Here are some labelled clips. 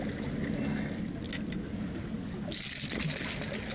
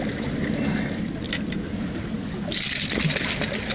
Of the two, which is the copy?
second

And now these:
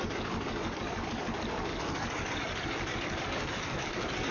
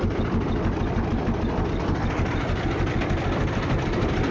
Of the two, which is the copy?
first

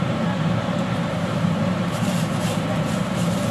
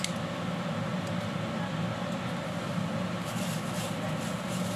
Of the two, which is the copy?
first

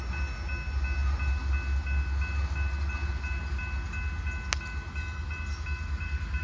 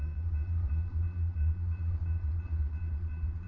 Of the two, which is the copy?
second